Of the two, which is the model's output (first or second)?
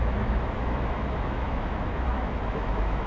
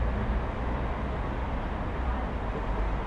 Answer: first